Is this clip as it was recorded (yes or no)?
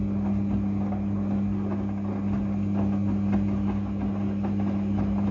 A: yes